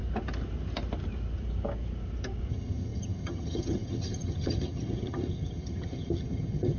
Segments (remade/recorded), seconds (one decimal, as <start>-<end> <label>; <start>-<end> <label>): 0.0-2.5 recorded; 2.5-6.8 remade